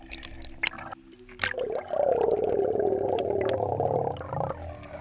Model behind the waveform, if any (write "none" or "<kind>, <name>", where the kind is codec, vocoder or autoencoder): none